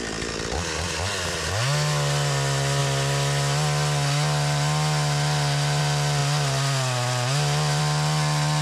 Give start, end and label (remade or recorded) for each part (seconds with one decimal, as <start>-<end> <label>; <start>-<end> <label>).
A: 0.0-8.6 recorded